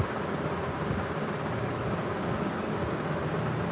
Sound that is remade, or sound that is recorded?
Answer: recorded